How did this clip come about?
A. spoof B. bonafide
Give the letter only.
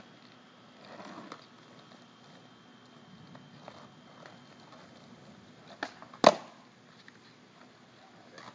B